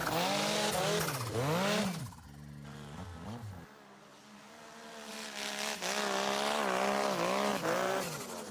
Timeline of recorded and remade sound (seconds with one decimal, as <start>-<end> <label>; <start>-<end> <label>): 0.0-7.5 recorded; 7.5-8.0 remade; 8.0-8.5 recorded